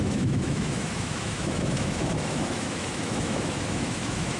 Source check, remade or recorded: remade